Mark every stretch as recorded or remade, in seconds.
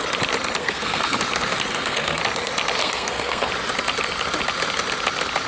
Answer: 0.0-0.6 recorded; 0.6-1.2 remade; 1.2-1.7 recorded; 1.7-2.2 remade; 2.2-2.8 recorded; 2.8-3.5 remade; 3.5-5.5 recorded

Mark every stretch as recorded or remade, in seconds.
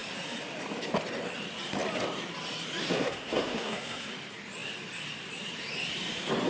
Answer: 0.0-2.8 recorded; 2.8-4.1 remade; 4.1-6.5 recorded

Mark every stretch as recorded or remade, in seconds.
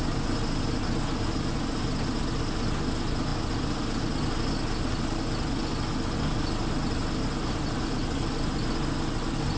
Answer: 0.0-9.6 recorded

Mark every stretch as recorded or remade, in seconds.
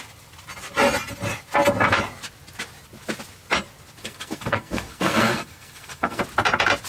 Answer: 0.0-4.0 recorded; 4.0-6.2 remade; 6.2-6.9 recorded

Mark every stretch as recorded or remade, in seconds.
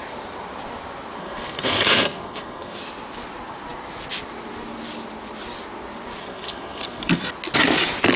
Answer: 0.0-1.2 recorded; 1.2-2.8 remade; 2.8-6.2 recorded; 6.2-7.2 remade; 7.2-8.2 recorded